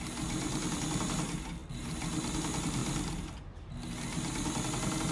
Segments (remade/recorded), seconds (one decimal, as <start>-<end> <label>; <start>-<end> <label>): 0.0-5.1 recorded